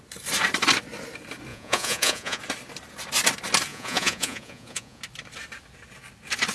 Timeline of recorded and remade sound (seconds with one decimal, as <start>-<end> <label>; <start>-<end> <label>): 0.0-1.5 recorded; 1.5-2.4 remade; 2.4-3.7 recorded; 3.7-5.0 remade; 5.0-6.5 recorded